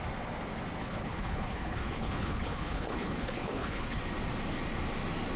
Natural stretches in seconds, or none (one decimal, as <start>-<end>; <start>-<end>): 0.0-0.8; 4.0-5.4